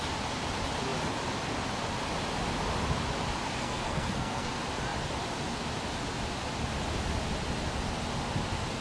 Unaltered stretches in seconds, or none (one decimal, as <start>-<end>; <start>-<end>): 0.0-3.6; 4.5-8.8